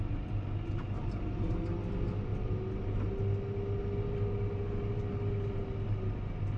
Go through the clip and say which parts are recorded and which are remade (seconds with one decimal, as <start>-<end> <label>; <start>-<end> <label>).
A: 0.0-6.6 recorded